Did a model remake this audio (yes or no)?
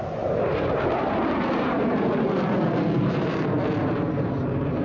yes